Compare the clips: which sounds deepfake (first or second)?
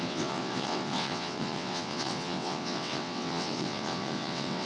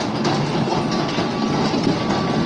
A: first